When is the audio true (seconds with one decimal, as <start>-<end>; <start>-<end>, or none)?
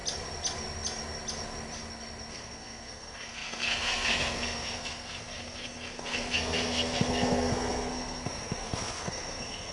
0.0-2.3